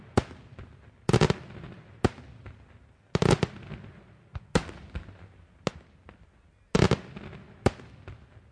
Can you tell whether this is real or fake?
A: real